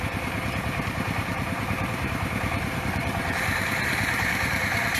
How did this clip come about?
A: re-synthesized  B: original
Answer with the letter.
A